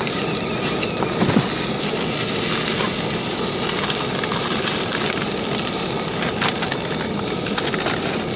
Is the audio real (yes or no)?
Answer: yes